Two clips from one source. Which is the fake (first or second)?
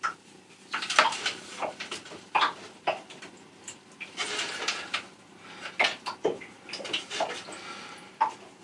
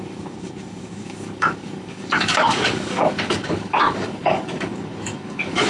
second